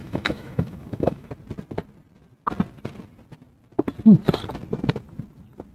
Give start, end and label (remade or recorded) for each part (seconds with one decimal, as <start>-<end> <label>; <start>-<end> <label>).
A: 0.0-1.3 remade; 1.3-5.7 recorded